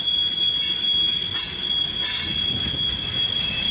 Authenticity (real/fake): real